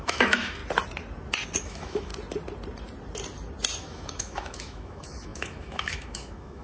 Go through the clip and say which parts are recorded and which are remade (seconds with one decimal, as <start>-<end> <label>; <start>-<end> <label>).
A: 0.0-0.6 remade; 0.6-1.6 recorded; 1.6-2.1 remade; 2.1-3.8 recorded; 3.8-6.6 remade